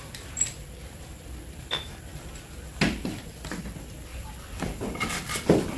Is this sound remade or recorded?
recorded